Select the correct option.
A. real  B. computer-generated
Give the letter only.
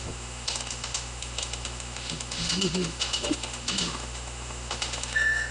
B